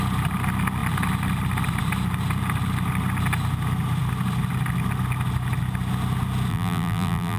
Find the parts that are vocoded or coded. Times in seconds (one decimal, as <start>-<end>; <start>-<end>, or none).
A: 6.5-7.4